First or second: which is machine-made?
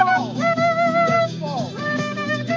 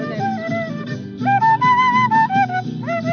first